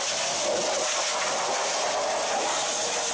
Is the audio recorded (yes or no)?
yes